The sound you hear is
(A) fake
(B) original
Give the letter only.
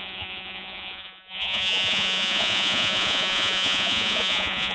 A